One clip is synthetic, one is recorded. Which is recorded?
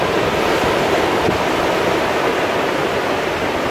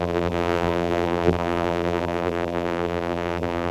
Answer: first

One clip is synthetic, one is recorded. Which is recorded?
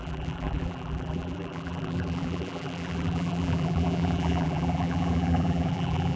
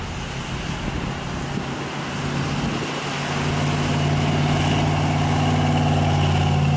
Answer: second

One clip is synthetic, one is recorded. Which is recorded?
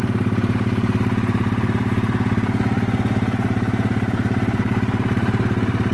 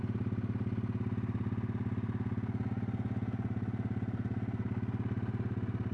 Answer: second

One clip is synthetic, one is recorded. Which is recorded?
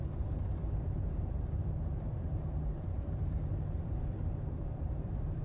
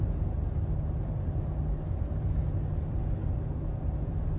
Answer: second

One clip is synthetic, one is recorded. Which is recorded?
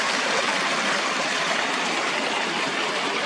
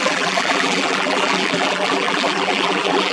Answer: first